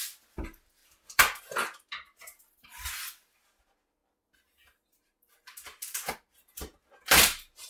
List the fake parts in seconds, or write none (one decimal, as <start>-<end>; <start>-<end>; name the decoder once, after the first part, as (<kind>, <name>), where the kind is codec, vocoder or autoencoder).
0.8-1.4 (vocoder, BigVGAN v2)